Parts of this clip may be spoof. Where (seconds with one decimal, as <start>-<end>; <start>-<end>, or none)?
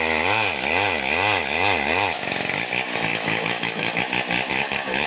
3.1-4.0; 4.5-5.1